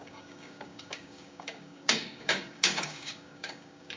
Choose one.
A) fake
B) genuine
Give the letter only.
A